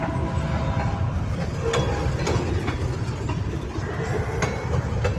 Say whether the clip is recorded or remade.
recorded